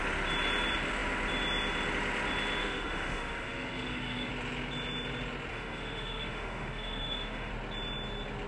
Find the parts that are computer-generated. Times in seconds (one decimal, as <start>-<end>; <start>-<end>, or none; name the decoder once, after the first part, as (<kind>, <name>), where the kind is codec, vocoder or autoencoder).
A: 2.6-4.3 (autoencoder, DAC-VAE); 5.5-7.5